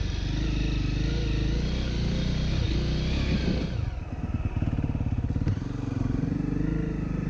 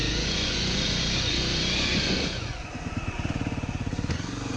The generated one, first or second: second